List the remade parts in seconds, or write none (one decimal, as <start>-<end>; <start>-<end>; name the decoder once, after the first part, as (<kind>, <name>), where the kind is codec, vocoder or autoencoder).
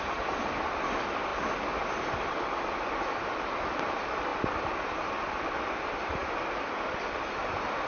none